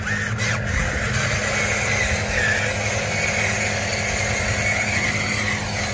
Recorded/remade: recorded